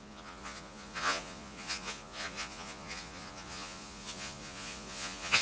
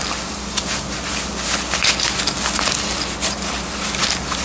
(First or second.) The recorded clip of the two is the second